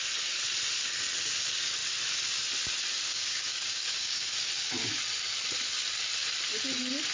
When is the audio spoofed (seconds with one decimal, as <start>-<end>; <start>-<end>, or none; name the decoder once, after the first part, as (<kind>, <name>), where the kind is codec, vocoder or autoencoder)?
3.1-4.5 (codec, DAC)